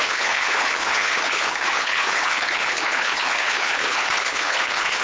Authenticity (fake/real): fake